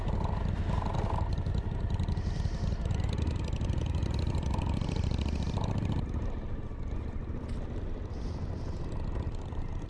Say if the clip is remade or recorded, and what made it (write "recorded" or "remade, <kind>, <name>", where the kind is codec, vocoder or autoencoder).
recorded